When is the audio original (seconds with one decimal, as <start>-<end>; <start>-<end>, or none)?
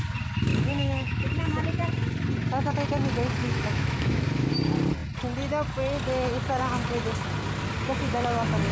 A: 0.0-0.5; 1.2-3.4; 4.5-8.7